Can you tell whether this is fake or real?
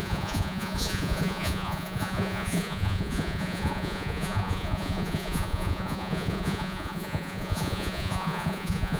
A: fake